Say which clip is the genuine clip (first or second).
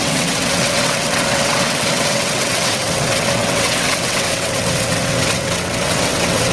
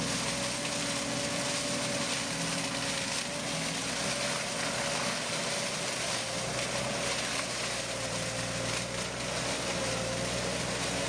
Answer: second